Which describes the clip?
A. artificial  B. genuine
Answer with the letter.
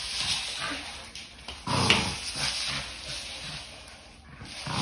B